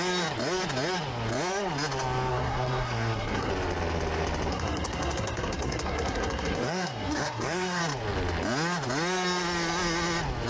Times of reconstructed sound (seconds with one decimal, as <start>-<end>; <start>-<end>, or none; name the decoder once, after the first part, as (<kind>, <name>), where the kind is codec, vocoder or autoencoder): 2.3-3.5 (codec, SNAC); 4.5-7.8